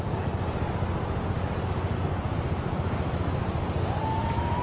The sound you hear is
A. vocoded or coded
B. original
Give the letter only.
B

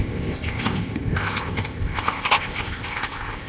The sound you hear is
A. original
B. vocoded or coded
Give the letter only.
B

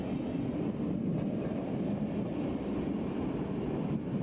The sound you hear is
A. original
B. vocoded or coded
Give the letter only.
A